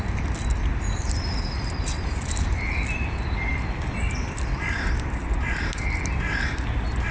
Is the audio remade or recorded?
recorded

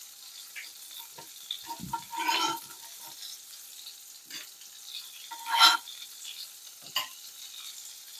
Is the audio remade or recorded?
recorded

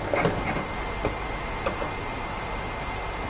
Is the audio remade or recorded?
recorded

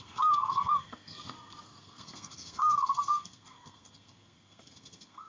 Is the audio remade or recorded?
remade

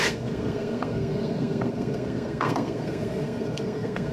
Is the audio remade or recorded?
remade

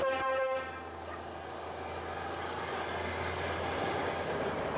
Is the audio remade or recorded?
recorded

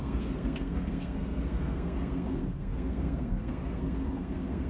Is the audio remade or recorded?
remade